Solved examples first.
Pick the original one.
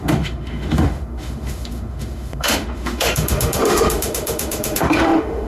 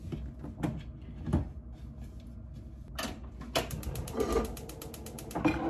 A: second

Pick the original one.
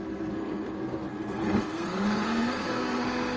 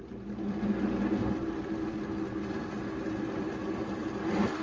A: second